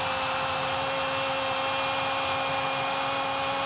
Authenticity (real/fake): real